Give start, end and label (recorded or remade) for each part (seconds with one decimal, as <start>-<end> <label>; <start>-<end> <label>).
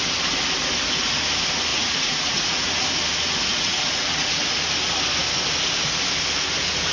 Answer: 0.0-1.7 recorded; 1.7-2.7 remade; 2.7-3.5 recorded; 3.5-4.4 remade; 4.4-6.9 recorded